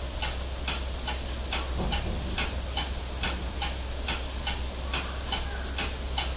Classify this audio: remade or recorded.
recorded